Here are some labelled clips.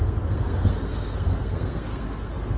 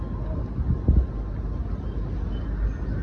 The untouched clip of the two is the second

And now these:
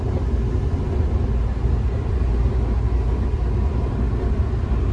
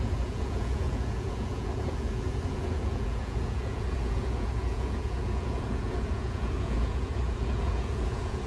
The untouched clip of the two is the first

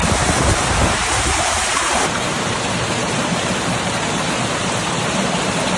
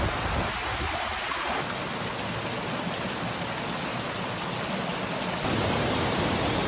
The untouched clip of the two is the second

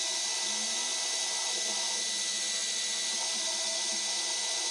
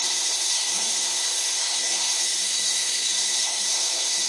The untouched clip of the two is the first